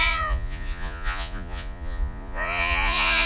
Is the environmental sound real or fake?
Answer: fake